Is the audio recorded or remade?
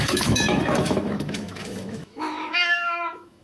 remade